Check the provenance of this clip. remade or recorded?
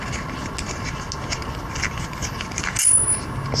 recorded